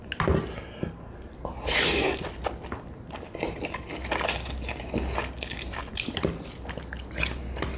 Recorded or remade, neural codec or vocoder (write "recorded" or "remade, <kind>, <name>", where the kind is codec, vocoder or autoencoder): recorded